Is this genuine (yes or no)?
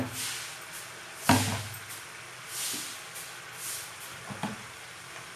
yes